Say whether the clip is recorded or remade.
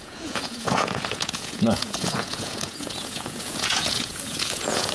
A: remade